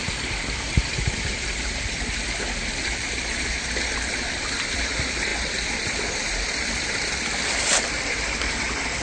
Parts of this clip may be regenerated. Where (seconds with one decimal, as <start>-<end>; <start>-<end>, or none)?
0.0-9.0